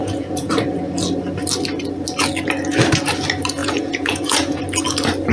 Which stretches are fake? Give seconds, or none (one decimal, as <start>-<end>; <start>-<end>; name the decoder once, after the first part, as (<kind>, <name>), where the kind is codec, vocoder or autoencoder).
0.0-0.5 (vocoder, Vocos); 3.6-4.6